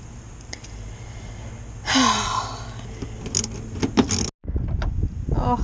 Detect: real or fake real